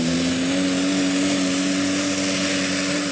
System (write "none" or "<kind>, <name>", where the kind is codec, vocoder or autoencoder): none